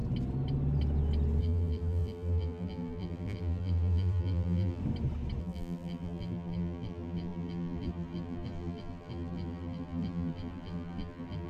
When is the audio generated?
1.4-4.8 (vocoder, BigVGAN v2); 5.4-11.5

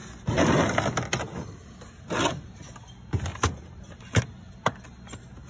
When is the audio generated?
3.3-4.2 (vocoder, BigVGAN v2)